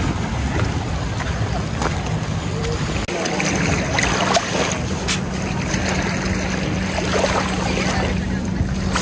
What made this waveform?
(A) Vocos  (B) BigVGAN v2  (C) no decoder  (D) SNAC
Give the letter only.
C